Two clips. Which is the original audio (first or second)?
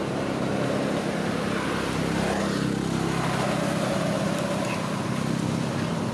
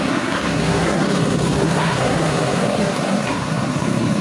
first